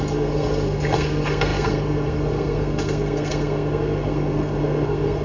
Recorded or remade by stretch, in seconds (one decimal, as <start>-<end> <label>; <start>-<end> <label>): 0.0-5.2 remade